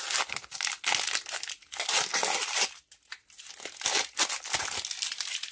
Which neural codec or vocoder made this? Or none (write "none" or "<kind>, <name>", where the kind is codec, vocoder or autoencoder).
none